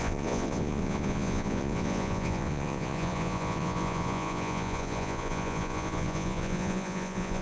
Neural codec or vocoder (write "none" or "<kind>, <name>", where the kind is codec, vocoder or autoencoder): vocoder, Vocos